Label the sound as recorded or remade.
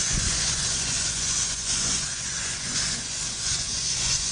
remade